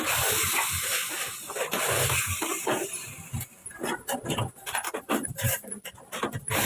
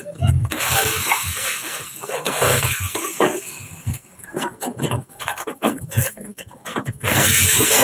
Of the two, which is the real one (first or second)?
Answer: first